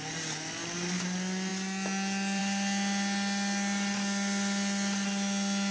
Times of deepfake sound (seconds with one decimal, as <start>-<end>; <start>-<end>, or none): none